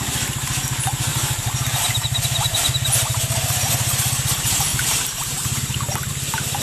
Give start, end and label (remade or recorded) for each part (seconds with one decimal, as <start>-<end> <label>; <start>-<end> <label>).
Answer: 0.0-1.1 recorded; 1.1-3.7 remade; 3.7-4.7 recorded; 4.7-6.1 remade; 6.1-6.6 recorded